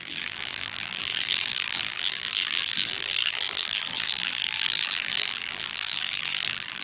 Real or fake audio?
fake